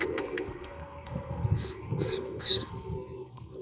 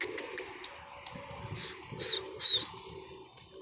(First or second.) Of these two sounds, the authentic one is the second